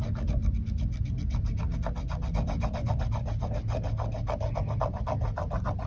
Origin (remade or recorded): recorded